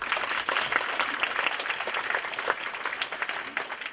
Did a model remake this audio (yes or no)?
no